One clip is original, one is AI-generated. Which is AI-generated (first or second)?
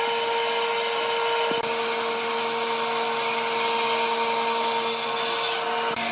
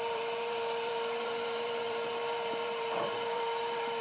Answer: second